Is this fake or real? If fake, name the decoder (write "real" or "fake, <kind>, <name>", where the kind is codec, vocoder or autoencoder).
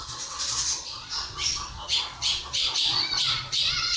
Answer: fake, vocoder, Vocos